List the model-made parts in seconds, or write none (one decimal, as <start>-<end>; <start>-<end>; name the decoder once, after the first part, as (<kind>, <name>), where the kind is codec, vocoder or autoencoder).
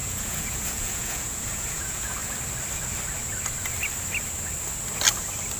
0.0-2.2 (vocoder, Vocos)